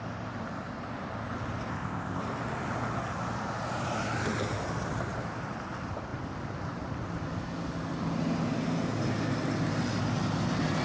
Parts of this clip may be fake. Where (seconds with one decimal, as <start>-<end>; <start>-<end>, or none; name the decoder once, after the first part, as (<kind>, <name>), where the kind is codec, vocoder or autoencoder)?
1.7-2.2 (codec, ZipCodec)